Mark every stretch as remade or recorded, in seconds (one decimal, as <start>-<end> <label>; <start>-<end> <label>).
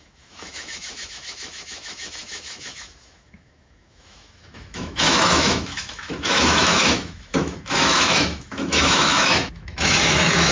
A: 0.0-10.5 remade